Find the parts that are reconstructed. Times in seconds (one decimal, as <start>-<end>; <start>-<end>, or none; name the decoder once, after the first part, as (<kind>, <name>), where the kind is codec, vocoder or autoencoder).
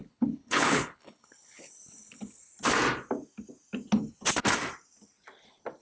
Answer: 0.0-2.4 (codec, HILCodec)